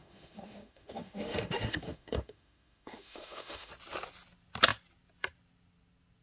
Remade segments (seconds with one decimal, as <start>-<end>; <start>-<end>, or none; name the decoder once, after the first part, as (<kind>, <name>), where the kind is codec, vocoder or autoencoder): 0.0-3.7 (autoencoder, DAC-VAE)

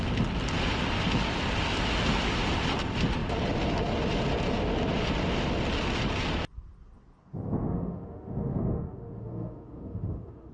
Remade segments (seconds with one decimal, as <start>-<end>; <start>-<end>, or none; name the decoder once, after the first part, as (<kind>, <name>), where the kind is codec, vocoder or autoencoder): 7.6-10.5 (autoencoder, DAC-VAE)

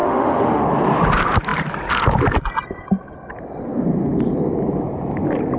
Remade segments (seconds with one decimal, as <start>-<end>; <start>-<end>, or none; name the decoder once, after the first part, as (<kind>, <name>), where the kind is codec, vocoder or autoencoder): 0.0-0.6 (autoencoder, DAC-VAE)

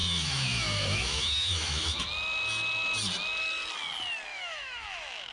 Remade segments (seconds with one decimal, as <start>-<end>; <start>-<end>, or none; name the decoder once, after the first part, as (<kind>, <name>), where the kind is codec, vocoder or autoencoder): 0.0-2.0 (autoencoder, DAC-VAE); 4.3-5.3

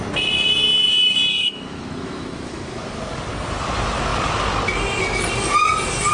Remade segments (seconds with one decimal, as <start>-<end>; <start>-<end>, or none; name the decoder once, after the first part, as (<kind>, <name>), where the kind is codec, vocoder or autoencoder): 1.3-2.8 (autoencoder, DAC-VAE)

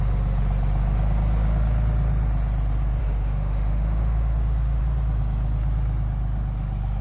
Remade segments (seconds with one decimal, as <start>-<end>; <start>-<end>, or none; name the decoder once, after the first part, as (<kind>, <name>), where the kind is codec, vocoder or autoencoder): 3.0-4.8 (autoencoder, DAC-VAE)

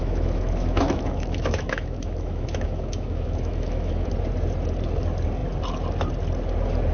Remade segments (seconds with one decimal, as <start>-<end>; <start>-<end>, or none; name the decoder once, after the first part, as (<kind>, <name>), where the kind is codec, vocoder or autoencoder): 0.0-4.1 (autoencoder, DAC-VAE)